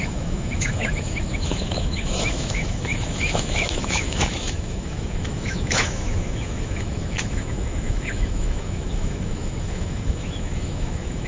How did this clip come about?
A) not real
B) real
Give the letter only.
A